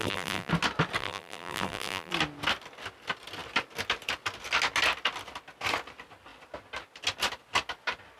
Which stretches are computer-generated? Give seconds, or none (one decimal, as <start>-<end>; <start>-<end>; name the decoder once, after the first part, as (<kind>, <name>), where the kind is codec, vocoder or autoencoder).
0.0-0.5 (vocoder, BigVGAN v2); 1.0-2.1